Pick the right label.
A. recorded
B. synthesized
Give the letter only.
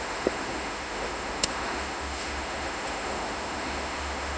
B